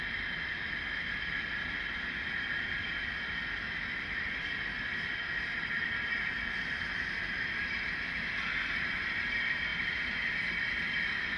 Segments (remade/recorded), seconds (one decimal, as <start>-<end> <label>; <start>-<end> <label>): 0.0-9.7 recorded; 9.7-10.3 remade; 10.3-11.4 recorded